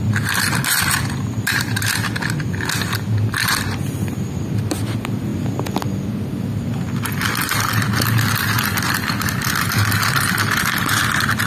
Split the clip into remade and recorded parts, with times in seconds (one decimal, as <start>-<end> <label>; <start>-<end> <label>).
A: 0.0-11.5 recorded

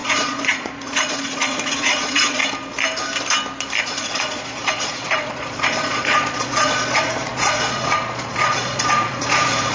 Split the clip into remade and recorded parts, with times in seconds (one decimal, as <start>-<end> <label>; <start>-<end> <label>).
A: 0.0-2.4 remade; 2.4-3.8 recorded; 3.8-9.7 remade